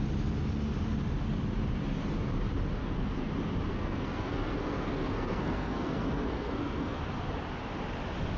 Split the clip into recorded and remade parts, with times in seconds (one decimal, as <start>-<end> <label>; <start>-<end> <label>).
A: 0.0-2.8 recorded; 2.8-3.3 remade; 3.3-3.7 recorded; 3.7-7.0 remade; 7.0-8.4 recorded